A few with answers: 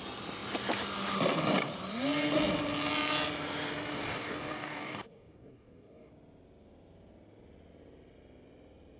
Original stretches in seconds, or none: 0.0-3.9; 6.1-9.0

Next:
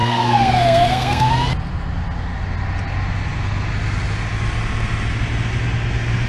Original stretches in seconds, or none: 1.3-6.3

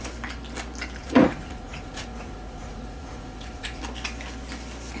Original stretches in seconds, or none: 0.0-1.0; 3.8-5.0

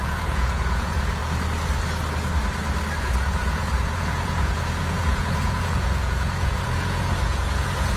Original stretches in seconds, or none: 1.2-3.0

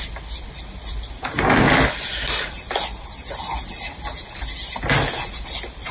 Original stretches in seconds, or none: 0.0-5.9